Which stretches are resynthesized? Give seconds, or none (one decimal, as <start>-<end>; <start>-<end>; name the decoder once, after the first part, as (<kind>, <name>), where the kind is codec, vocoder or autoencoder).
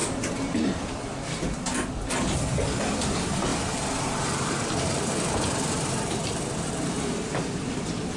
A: 3.5-6.7 (vocoder, BigVGAN v2)